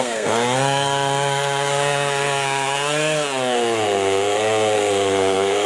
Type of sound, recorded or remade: remade